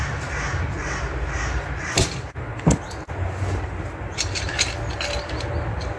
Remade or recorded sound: recorded